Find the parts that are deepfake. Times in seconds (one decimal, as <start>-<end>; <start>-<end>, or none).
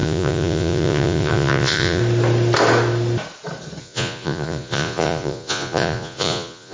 0.0-2.0; 3.8-6.7